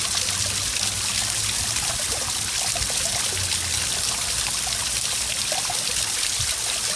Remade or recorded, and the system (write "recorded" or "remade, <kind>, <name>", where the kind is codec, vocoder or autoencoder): recorded